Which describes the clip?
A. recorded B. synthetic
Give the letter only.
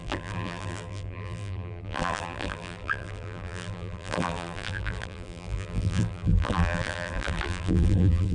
B